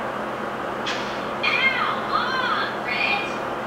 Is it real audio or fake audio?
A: real